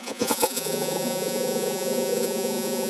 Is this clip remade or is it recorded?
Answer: remade